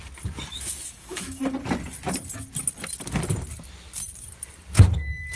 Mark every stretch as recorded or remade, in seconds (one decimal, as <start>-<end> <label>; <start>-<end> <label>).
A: 0.0-0.5 recorded; 0.5-1.4 remade; 1.4-5.4 recorded